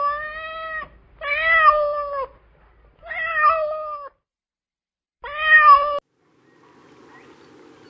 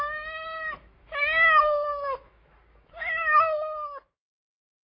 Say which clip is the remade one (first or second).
second